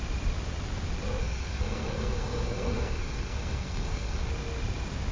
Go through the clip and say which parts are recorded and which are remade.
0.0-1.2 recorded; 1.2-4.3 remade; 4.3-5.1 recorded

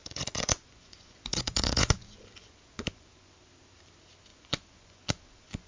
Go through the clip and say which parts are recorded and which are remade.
0.0-3.4 remade; 3.4-4.3 recorded; 4.3-5.7 remade